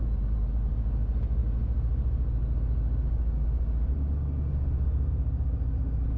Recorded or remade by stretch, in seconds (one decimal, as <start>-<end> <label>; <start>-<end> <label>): 0.0-6.2 recorded